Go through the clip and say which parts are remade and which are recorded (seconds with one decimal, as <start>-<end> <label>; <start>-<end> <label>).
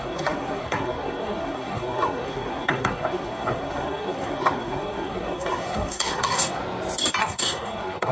0.0-6.6 remade; 6.6-7.2 recorded; 7.2-8.1 remade